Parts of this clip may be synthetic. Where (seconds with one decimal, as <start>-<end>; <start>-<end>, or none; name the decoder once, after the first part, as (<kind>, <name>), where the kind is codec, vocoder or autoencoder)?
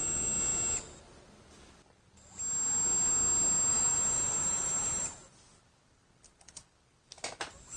3.7-5.3 (vocoder, BigVGAN v2)